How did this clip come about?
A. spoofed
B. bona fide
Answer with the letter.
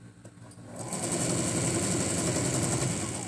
B